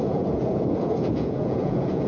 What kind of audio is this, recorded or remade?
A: remade